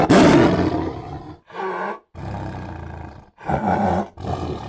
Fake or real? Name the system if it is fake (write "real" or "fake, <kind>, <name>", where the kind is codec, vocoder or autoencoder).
real